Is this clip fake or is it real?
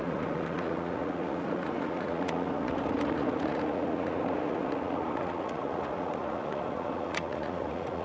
fake